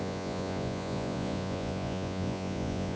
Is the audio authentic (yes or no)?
no